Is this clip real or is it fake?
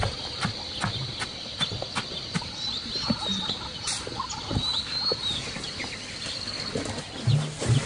real